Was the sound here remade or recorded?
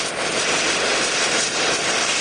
recorded